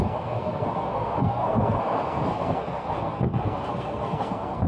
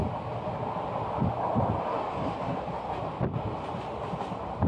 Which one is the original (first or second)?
second